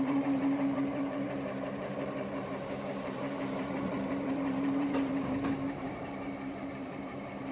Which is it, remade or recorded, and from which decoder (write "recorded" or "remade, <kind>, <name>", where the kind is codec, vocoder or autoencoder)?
remade, vocoder, BigVGAN v2